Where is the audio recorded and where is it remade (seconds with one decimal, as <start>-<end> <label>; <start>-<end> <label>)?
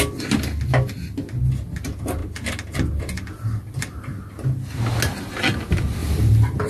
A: 0.0-6.0 recorded; 6.0-6.7 remade